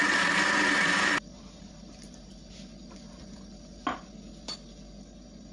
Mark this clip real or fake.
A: real